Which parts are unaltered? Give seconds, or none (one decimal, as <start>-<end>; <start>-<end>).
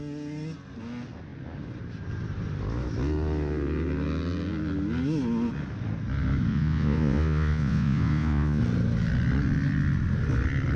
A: 0.0-6.5; 8.6-10.8